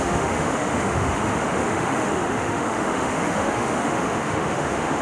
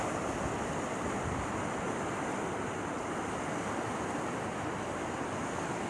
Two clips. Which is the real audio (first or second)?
second